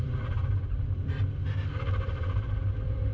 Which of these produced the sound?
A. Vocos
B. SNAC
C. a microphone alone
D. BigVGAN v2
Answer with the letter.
D